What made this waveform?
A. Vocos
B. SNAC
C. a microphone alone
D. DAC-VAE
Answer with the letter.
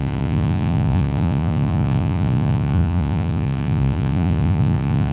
A